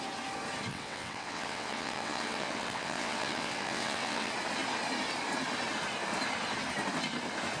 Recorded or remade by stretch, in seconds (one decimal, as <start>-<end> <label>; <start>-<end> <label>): 0.0-0.7 recorded; 0.7-4.3 remade; 4.3-7.6 recorded